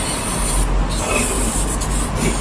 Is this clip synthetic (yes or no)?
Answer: no